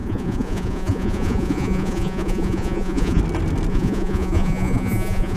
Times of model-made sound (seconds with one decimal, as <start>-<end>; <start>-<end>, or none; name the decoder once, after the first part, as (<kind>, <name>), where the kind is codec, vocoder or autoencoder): 0.0-3.2 (vocoder, Vocos); 3.7-5.4